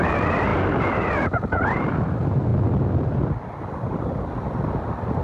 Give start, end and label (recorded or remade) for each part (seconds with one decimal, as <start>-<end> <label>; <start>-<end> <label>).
0.0-5.2 recorded